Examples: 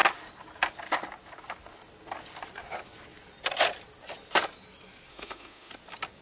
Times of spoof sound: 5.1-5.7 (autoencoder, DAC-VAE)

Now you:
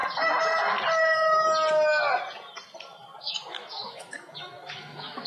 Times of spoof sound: 3.2-5.3 (autoencoder, DAC-VAE)

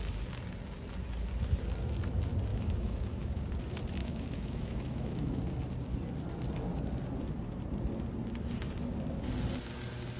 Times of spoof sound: 2.5-3.5 (autoencoder, DAC-VAE); 4.0-5.4

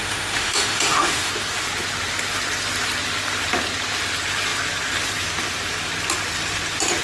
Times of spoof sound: 0.0-1.3 (autoencoder, DAC-VAE)

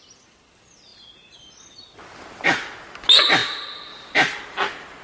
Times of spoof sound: none

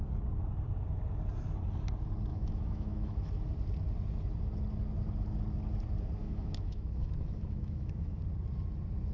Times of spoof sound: 2.3-3.3 (autoencoder, DAC-VAE); 6.2-8.2

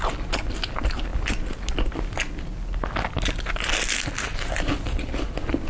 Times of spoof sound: none

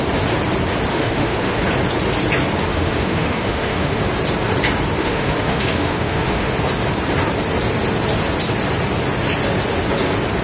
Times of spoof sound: 0.9-1.6 (autoencoder, DAC-VAE); 2.7-4.0; 5.0-6.5